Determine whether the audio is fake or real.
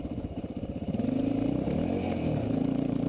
real